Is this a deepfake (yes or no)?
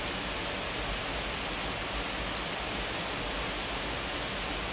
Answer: no